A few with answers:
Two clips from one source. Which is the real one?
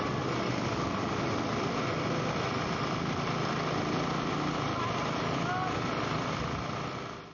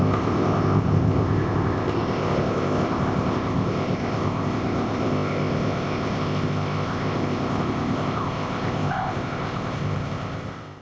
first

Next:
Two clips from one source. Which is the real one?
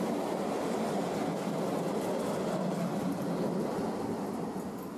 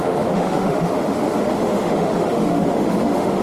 first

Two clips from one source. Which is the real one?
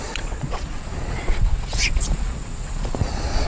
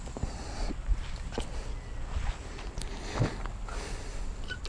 second